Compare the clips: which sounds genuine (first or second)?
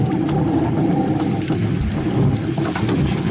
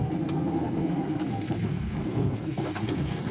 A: first